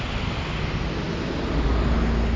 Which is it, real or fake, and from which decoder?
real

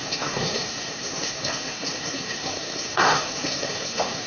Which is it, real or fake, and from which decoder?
fake, codec, SNAC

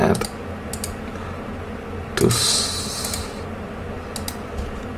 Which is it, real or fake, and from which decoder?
real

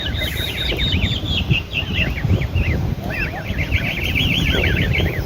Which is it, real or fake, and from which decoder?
fake, vocoder, BigVGAN v2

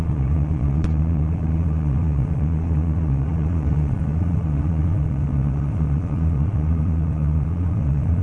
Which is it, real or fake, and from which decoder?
fake, vocoder, Vocos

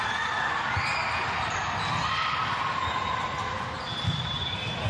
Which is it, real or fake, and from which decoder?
real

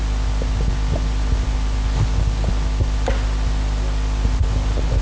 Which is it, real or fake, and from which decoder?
real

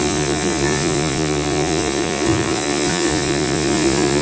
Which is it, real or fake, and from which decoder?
fake, vocoder, Vocos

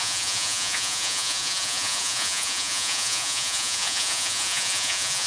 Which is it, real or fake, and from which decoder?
fake, vocoder, Vocos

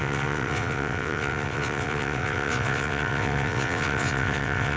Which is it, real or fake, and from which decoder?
fake, vocoder, WaveNeXt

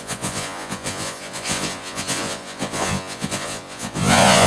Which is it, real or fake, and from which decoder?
fake, vocoder, Vocos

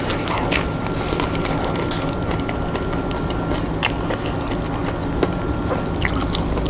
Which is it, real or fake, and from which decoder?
real